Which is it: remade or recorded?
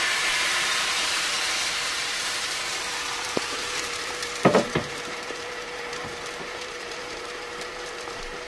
remade